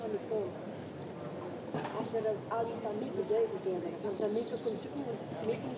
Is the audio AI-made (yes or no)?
no